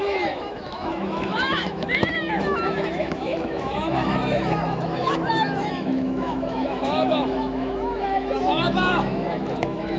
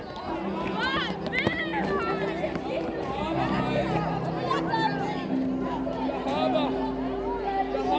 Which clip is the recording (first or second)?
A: second